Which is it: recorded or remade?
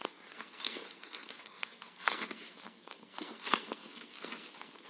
remade